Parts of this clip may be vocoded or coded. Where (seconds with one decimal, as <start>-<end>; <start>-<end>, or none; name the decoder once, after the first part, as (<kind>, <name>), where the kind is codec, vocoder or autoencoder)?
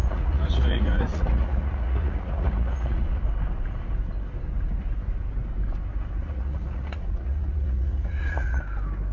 0.0-3.2 (vocoder, Vocos); 6.2-8.6